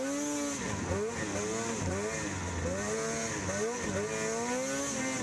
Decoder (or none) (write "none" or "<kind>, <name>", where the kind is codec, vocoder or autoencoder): none